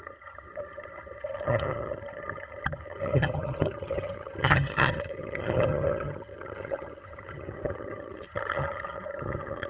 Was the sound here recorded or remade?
remade